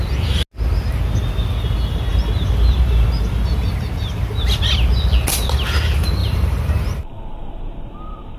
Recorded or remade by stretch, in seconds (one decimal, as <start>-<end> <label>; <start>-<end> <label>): 0.0-6.2 recorded; 6.2-7.6 remade; 7.6-8.4 recorded